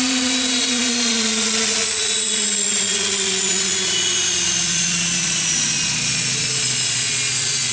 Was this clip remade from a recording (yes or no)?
yes